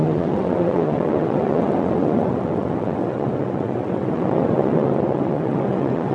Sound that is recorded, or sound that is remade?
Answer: remade